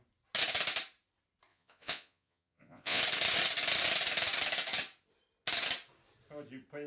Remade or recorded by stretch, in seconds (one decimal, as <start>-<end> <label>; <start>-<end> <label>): 0.0-1.5 recorded; 1.5-3.0 remade; 3.0-6.9 recorded